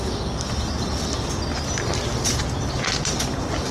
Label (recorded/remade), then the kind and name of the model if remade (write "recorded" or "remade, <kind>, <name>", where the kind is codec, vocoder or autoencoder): recorded